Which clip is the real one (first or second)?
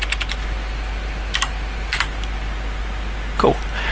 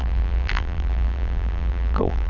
first